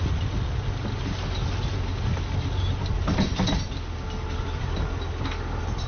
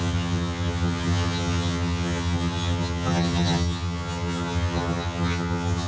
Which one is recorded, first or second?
first